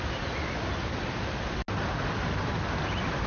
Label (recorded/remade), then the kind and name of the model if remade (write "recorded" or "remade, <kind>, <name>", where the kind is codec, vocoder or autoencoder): recorded